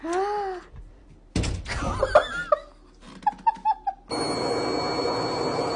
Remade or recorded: recorded